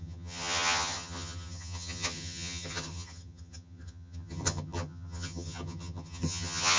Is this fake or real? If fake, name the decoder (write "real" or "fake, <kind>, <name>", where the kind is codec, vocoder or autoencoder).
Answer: fake, vocoder, HiFi-GAN